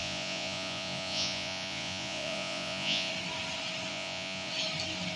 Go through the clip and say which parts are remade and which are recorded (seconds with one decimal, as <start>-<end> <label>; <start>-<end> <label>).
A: 0.0-3.1 remade; 3.1-3.9 recorded; 3.9-4.5 remade; 4.5-5.2 recorded